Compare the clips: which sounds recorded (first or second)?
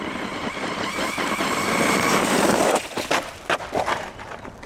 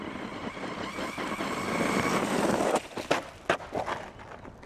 second